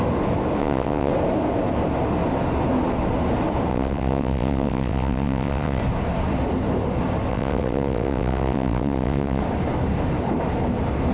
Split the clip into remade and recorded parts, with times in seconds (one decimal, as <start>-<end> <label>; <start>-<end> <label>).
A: 0.0-0.6 recorded; 0.6-1.1 remade; 1.1-3.7 recorded; 3.7-5.8 remade; 5.8-7.3 recorded; 7.3-9.4 remade; 9.4-11.1 recorded